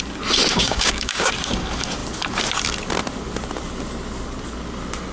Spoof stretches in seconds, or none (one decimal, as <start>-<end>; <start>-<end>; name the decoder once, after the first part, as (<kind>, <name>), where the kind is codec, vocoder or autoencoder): 0.5-1.3 (codec, DAC)

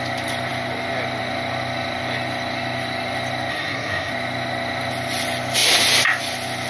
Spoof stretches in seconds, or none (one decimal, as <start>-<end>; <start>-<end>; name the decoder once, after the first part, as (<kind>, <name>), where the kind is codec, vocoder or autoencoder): 3.5-4.1 (codec, SNAC)

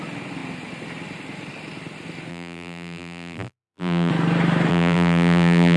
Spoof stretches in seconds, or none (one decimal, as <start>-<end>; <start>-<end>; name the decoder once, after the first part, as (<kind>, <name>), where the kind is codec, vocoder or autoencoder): 2.3-4.1 (vocoder, BigVGAN v2); 4.7-5.8